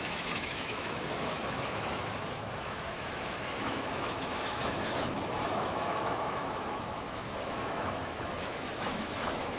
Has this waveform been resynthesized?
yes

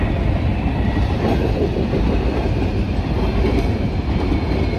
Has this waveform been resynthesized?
no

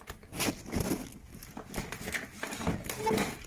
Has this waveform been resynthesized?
no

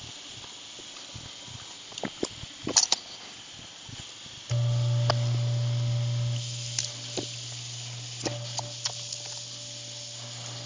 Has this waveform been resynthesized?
no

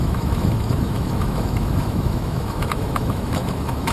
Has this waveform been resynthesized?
yes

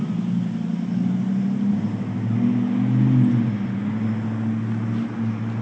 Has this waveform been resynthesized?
no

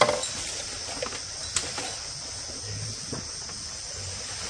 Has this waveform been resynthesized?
no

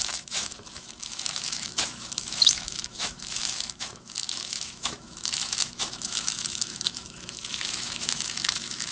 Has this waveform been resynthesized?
yes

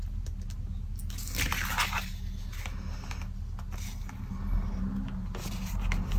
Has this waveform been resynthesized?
no